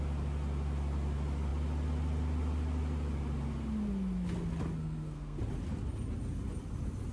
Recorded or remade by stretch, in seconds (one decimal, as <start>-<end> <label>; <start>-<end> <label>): 0.0-4.8 recorded; 4.8-5.4 remade; 5.4-7.1 recorded